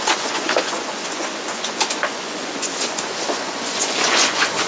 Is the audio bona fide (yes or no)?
no